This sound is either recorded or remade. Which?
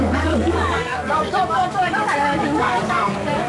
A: remade